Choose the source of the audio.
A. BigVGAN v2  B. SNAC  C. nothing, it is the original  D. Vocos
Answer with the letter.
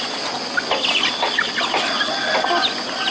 C